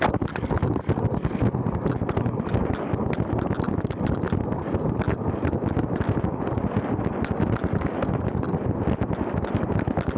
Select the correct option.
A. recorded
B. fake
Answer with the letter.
A